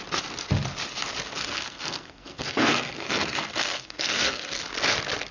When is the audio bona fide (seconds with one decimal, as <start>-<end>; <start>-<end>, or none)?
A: 0.0-1.4; 4.6-5.3